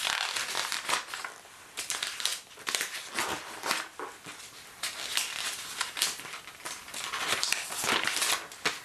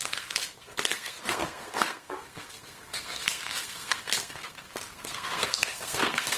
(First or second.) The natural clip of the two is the first